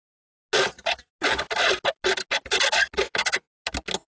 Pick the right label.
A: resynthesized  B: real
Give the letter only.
B